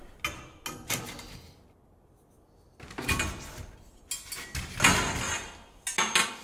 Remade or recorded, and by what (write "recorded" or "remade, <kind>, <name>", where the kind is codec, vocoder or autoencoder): recorded